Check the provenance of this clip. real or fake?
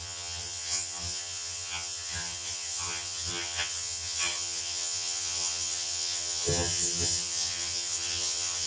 fake